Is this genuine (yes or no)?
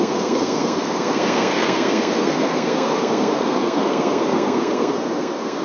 no